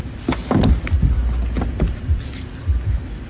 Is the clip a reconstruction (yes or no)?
yes